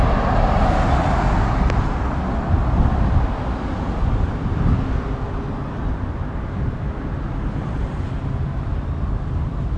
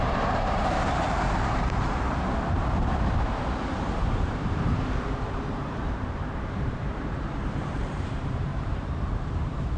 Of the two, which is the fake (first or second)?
second